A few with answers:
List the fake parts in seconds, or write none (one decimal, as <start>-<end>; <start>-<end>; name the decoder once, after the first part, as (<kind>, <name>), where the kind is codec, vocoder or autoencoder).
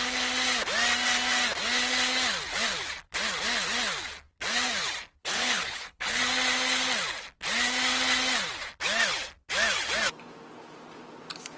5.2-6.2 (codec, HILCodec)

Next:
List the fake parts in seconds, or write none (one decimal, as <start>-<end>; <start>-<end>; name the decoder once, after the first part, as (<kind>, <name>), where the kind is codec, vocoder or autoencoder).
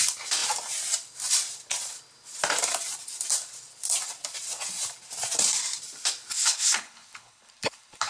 6.3-8.1 (codec, HILCodec)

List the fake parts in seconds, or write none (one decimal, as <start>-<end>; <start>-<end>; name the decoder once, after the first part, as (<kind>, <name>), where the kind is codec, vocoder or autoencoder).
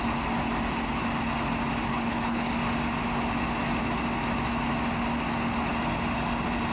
1.9-2.5 (codec, HILCodec)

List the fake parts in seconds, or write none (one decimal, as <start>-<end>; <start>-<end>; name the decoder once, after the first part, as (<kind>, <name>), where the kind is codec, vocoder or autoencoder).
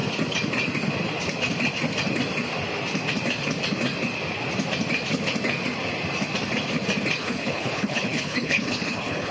7.2-9.3 (codec, HILCodec)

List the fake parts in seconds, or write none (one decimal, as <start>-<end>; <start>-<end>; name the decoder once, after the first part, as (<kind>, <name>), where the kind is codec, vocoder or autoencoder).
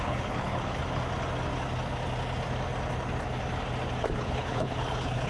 0.0-0.8 (codec, HILCodec); 4.0-5.3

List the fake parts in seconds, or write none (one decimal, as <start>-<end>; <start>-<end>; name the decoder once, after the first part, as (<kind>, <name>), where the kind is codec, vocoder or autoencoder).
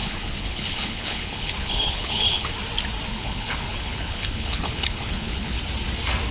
0.0-2.5 (codec, HILCodec); 3.1-5.6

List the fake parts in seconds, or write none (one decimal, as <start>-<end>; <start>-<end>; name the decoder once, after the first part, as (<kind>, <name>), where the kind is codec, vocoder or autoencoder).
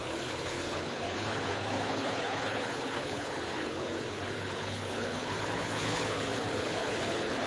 0.0-7.5 (codec, HILCodec)